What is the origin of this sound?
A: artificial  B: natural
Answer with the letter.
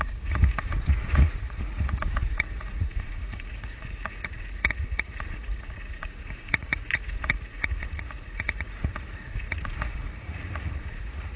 A